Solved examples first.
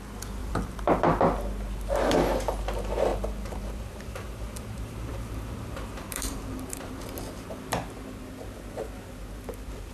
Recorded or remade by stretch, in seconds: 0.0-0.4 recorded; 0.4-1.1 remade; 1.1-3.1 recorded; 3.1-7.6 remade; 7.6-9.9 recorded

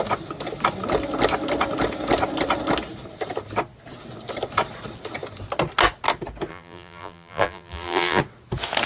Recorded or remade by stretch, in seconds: 0.0-6.5 recorded; 6.5-8.2 remade; 8.2-8.9 recorded

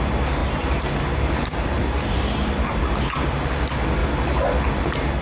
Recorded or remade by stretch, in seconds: 0.0-0.4 recorded; 0.4-2.8 remade; 2.8-5.2 recorded

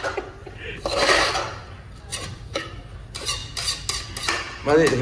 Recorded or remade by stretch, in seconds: 0.0-0.4 recorded; 0.4-1.6 remade; 1.6-2.1 recorded; 2.1-2.8 remade; 2.8-5.0 recorded

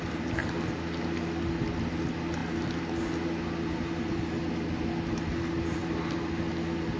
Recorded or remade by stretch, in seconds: 0.0-7.0 recorded

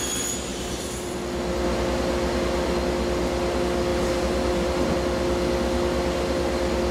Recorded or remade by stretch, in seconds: 0.0-0.5 recorded; 0.5-1.2 remade; 1.2-3.9 recorded; 3.9-4.9 remade; 4.9-6.9 recorded

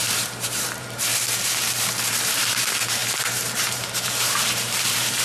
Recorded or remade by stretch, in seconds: 0.0-1.1 remade; 1.1-2.1 recorded; 2.1-5.2 remade